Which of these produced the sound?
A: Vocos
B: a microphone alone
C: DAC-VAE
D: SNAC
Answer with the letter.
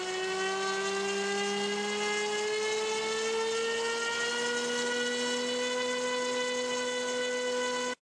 B